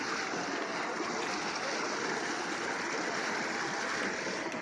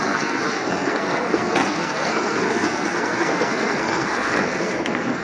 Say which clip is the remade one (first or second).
second